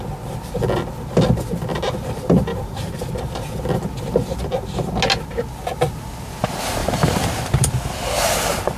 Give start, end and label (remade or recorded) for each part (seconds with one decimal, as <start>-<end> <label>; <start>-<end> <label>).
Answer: 0.0-2.5 recorded; 2.5-3.1 remade; 3.1-6.8 recorded; 6.8-7.7 remade; 7.7-8.8 recorded